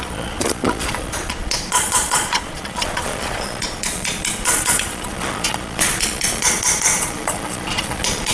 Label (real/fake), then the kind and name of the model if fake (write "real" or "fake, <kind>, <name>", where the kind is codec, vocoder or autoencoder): fake, vocoder, Vocos